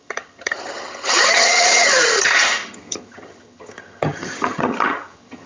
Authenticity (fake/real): fake